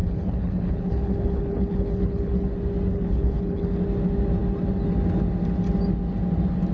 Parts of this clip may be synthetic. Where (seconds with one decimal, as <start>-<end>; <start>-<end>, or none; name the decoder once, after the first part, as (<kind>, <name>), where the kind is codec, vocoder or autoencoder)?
0.0-2.5 (codec, HILCodec); 2.9-3.8

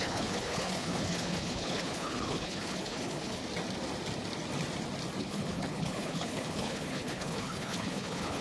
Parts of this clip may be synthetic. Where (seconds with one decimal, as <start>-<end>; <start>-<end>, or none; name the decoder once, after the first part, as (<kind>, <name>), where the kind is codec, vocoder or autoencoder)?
0.0-3.4 (codec, HILCodec); 5.2-8.4

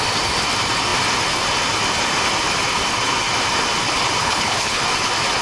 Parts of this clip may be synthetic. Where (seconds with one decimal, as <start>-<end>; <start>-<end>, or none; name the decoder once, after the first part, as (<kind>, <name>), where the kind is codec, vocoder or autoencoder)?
4.2-4.8 (codec, HILCodec)